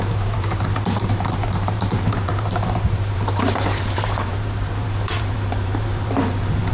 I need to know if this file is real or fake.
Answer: fake